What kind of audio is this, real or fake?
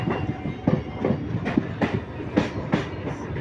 real